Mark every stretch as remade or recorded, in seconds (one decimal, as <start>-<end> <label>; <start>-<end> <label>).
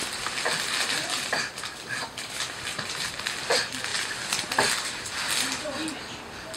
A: 0.0-1.7 recorded; 1.7-2.4 remade; 2.4-6.6 recorded